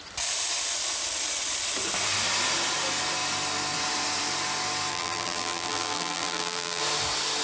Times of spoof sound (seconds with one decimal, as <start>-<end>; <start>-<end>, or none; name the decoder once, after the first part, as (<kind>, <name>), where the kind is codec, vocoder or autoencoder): 4.9-6.8 (vocoder, BigVGAN v2)